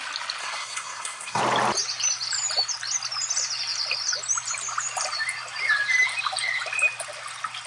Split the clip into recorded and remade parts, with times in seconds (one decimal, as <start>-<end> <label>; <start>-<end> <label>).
0.0-0.4 recorded; 0.4-1.4 remade; 1.4-7.7 recorded